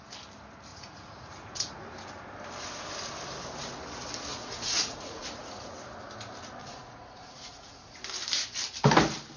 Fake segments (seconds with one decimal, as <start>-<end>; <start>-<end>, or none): 0.7-1.8; 4.3-5.7; 6.6-8.0